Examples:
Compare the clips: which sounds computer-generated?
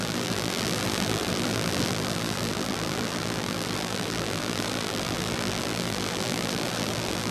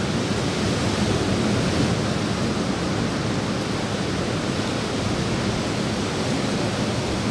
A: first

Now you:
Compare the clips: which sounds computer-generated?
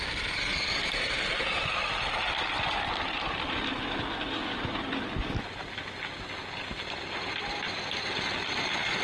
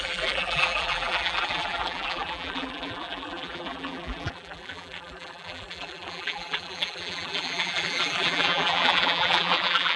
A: second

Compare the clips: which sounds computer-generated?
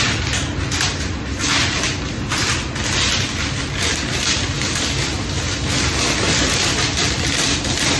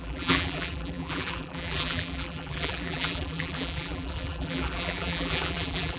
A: second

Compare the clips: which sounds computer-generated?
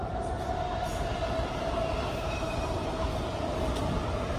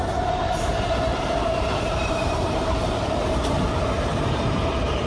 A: second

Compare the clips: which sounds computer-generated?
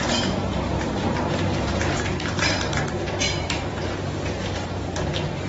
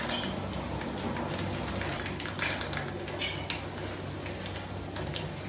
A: first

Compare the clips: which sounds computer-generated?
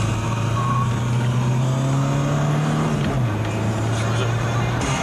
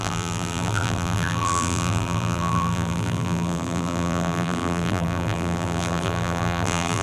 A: second